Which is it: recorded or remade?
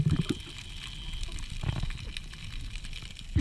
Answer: recorded